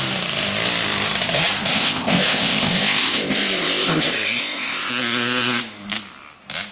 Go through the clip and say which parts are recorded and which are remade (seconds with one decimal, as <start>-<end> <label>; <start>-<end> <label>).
0.0-1.7 recorded; 1.7-4.9 remade; 4.9-6.7 recorded